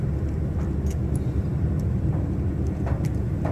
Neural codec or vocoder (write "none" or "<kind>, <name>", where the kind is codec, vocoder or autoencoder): none